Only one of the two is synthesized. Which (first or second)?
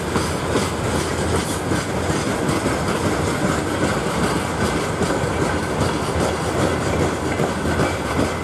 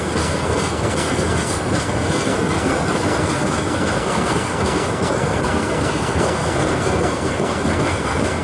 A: second